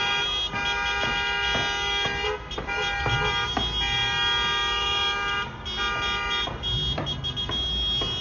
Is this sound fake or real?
real